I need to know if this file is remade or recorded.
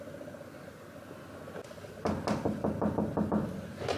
recorded